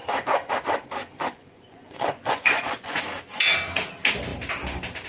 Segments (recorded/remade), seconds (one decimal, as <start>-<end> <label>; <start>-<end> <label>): 0.0-0.5 remade; 0.5-1.0 recorded; 1.0-3.0 remade; 3.0-5.1 recorded